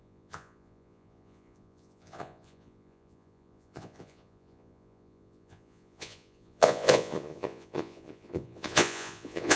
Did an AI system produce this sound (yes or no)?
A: yes